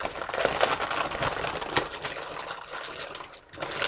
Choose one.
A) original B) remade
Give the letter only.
A